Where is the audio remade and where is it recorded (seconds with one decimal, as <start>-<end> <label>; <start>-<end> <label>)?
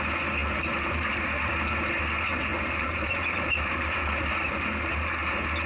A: 0.0-2.5 recorded; 2.5-4.6 remade; 4.6-5.7 recorded